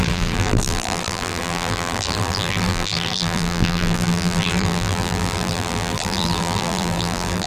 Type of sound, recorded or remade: remade